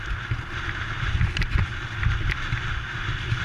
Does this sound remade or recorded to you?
recorded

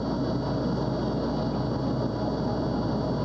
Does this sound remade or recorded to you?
recorded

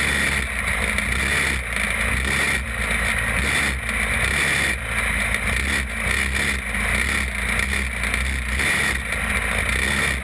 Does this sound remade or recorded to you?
recorded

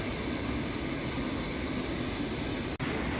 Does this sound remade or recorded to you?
recorded